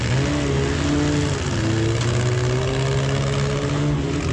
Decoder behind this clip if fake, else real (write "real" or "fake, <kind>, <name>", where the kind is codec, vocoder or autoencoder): real